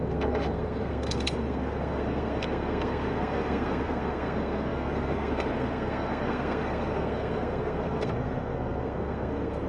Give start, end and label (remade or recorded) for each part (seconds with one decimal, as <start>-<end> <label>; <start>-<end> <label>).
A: 0.0-9.7 remade